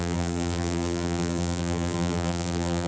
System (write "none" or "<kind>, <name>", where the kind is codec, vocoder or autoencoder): vocoder, BigVGAN v2